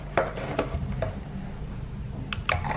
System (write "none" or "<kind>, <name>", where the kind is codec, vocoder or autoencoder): none